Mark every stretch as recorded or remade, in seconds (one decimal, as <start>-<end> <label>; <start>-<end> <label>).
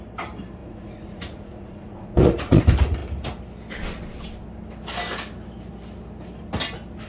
0.0-0.6 recorded; 0.6-2.6 remade; 2.6-7.1 recorded